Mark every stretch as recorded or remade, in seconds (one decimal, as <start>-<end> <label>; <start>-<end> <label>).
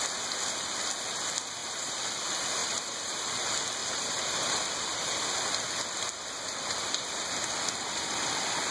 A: 0.0-1.6 recorded; 1.6-2.1 remade; 2.1-2.6 recorded; 2.6-3.4 remade; 3.4-3.8 recorded; 3.8-5.2 remade; 5.2-8.7 recorded